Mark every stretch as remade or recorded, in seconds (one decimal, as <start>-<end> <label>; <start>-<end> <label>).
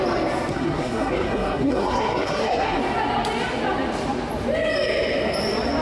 0.0-0.5 recorded; 0.5-2.8 remade; 2.8-5.8 recorded